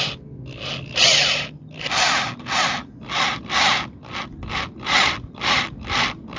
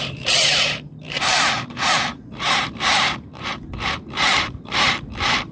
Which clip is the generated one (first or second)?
second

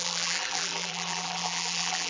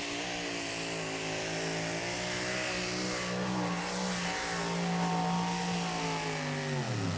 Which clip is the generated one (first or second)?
first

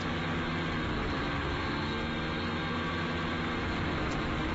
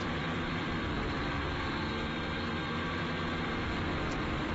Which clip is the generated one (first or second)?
second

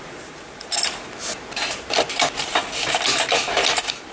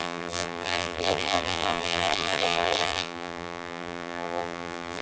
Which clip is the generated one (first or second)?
second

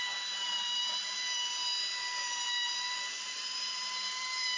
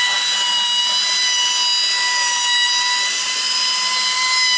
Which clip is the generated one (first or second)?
first